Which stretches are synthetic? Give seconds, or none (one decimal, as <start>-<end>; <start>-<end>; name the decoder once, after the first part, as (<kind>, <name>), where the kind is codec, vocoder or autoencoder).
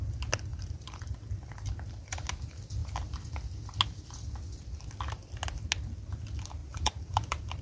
0.5-1.2 (vocoder, BigVGAN v2); 6.6-7.6